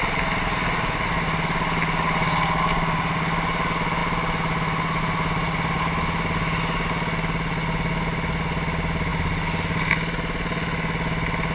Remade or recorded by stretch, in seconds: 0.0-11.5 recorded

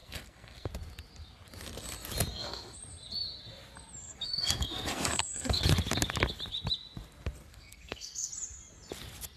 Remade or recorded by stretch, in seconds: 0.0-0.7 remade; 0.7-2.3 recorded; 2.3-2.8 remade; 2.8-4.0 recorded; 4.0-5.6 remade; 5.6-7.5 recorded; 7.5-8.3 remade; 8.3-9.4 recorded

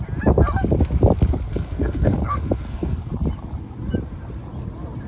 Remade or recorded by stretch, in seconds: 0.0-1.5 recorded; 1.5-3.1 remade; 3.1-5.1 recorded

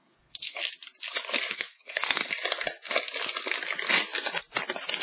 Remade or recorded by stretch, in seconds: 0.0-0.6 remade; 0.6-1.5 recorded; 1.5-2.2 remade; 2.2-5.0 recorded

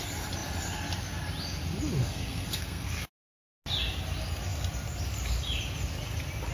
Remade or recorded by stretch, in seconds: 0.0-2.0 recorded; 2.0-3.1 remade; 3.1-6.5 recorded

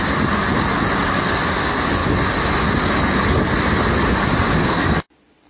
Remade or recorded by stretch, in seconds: 0.0-4.6 recorded; 4.6-5.1 remade; 5.1-5.5 recorded

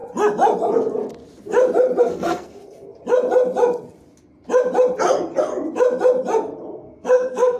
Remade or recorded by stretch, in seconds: 0.0-2.0 recorded; 2.0-2.9 remade; 2.9-6.7 recorded; 6.7-7.6 remade